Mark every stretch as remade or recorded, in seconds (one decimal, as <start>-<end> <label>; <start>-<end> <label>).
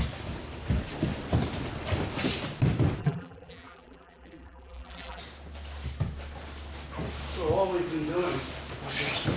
0.0-3.0 recorded; 3.0-5.2 remade; 5.2-9.4 recorded